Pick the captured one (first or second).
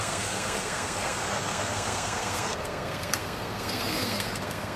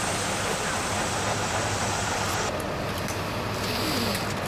second